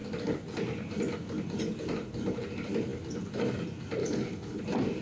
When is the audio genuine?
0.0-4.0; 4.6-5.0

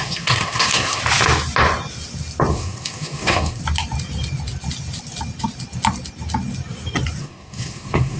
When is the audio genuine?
1.0-2.5; 3.6-7.2

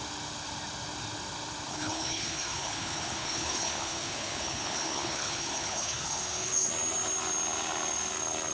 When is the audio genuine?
0.0-1.7; 6.7-8.5

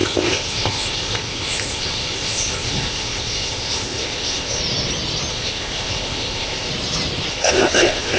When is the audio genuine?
4.6-5.3; 6.7-7.3

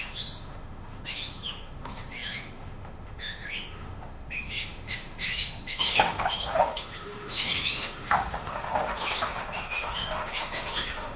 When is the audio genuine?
none